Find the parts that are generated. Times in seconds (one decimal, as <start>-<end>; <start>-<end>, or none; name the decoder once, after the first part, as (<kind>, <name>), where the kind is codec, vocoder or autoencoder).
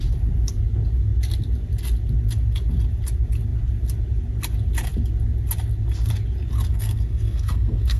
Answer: 6.7-8.0 (codec, SNAC)